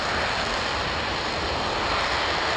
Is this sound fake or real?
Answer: real